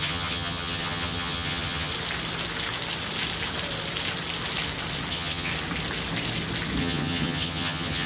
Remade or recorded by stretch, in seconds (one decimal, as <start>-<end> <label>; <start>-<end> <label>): 0.0-1.9 remade; 1.9-5.1 recorded; 5.1-5.5 remade; 5.5-6.8 recorded; 6.8-8.1 remade